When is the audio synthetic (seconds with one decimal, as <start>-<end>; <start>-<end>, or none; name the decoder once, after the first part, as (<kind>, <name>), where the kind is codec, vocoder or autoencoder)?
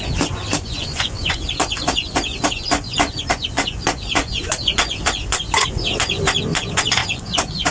0.0-7.7 (vocoder, Vocos)